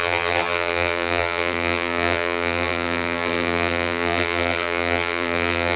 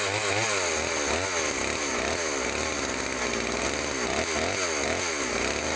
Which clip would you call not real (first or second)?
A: first